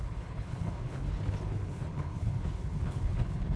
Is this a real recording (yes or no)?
no